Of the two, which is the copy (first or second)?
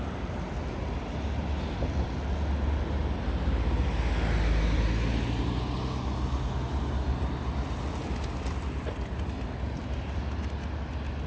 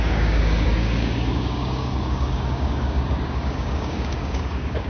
second